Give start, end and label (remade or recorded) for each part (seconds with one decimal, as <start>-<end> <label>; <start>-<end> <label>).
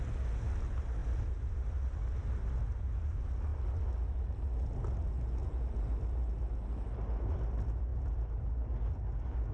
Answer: 0.0-9.5 recorded